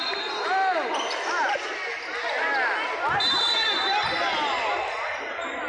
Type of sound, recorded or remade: recorded